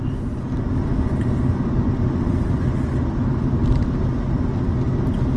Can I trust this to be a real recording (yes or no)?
yes